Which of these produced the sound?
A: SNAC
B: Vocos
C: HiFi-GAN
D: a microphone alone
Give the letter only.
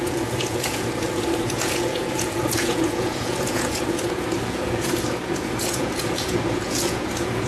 B